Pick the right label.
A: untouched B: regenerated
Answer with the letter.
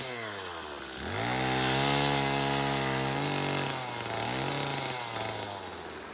A